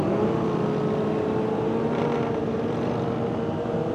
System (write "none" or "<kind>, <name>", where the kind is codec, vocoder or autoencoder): none